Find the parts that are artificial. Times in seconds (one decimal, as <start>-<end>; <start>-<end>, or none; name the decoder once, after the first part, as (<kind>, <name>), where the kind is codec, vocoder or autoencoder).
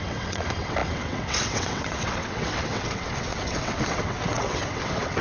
0.0-5.2 (vocoder, WaveNeXt)